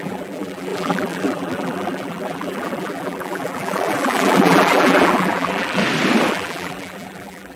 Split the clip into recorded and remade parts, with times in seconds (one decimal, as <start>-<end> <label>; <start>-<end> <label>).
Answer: 0.0-5.8 remade; 5.8-6.3 recorded; 6.3-7.6 remade